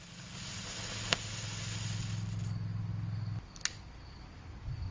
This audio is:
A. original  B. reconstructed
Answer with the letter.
A